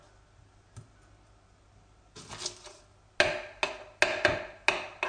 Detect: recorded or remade recorded